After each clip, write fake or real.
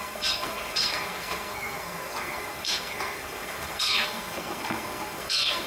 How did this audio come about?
fake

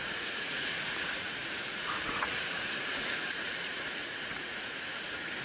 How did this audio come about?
fake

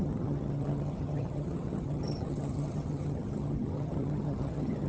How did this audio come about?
fake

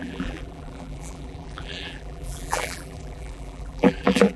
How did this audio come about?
fake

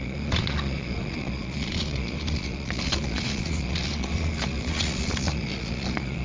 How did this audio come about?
fake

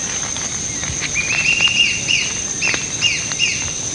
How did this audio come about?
real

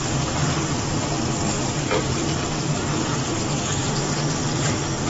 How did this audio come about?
real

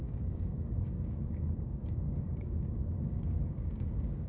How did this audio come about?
fake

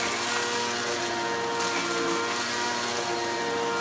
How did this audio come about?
real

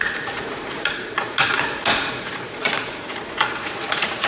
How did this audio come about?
fake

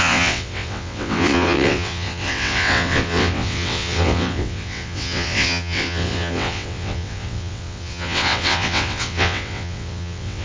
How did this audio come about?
fake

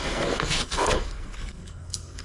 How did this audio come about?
fake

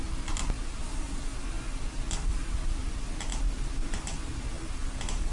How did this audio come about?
real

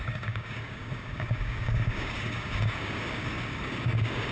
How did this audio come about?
fake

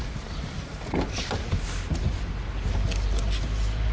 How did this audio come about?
real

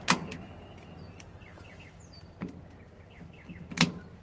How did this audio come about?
real